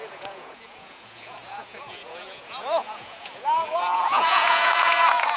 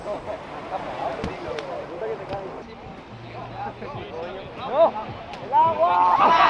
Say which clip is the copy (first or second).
first